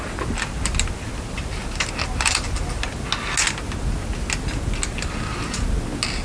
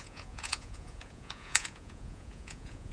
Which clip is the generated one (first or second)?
second